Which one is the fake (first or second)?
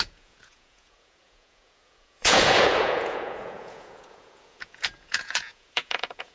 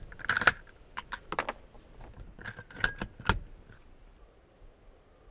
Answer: first